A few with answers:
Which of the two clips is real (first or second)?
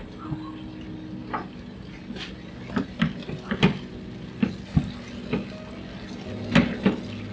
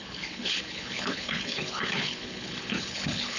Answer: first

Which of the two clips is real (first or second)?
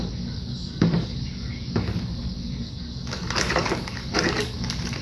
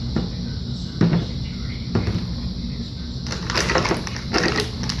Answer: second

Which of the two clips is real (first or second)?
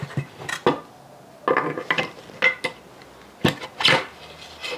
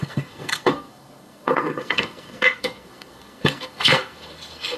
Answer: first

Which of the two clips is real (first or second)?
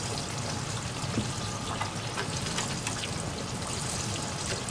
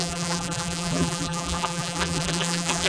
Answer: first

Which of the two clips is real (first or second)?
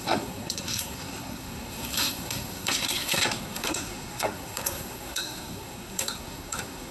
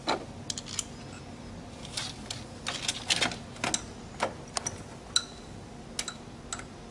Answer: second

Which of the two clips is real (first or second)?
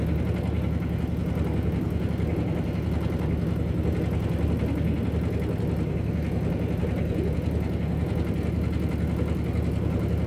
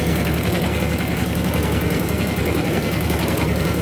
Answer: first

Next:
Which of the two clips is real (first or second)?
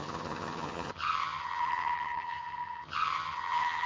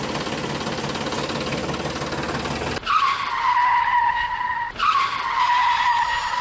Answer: second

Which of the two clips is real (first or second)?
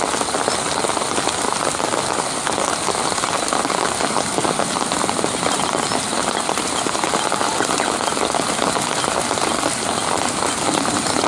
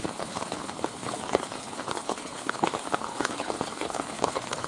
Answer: first